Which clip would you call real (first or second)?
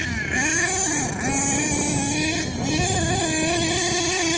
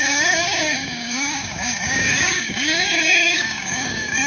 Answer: first